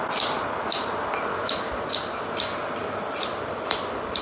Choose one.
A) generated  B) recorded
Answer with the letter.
B